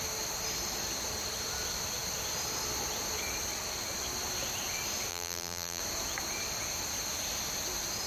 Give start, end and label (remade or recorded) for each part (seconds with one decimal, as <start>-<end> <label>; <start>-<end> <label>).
0.0-5.1 recorded; 5.1-5.8 remade; 5.8-8.1 recorded